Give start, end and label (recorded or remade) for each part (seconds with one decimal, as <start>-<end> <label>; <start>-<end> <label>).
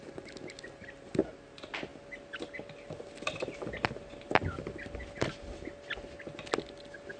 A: 0.0-7.2 recorded